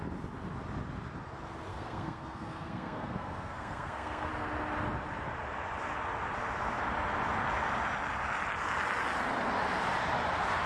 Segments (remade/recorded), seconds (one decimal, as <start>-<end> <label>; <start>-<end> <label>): 0.0-1.7 recorded; 1.7-4.3 remade; 4.3-10.7 recorded